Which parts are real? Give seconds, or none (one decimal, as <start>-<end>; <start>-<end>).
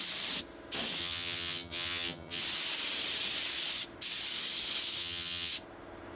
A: 0.0-1.0; 2.4-5.0; 5.5-6.1